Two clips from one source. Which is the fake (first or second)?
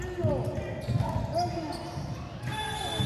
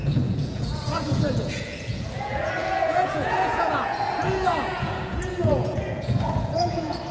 second